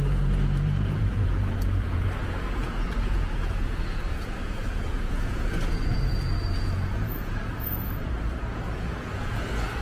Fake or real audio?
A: fake